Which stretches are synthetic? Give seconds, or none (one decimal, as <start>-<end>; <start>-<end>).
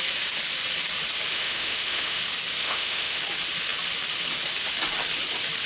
1.3-2.2; 2.6-3.2